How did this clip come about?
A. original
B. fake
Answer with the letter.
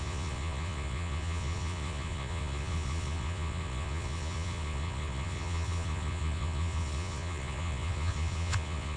B